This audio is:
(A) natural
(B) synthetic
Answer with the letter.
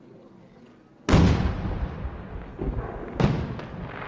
A